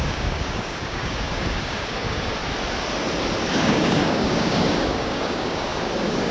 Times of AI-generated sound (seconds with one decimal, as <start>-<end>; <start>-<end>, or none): 0.0-2.4; 3.5-6.3